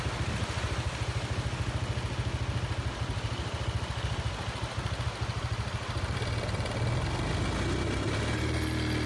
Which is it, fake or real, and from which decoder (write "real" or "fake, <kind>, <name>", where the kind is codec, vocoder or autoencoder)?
real